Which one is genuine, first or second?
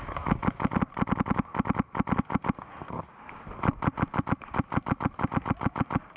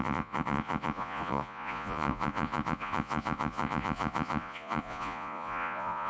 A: first